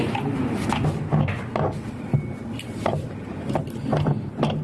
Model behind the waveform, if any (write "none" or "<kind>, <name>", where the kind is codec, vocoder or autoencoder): none